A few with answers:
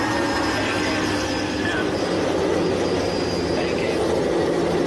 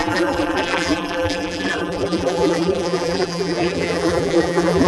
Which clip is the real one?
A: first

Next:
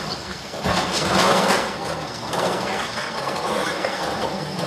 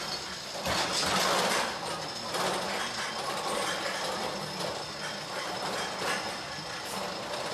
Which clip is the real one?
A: second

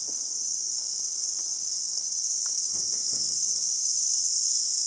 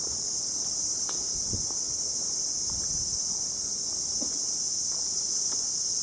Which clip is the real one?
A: second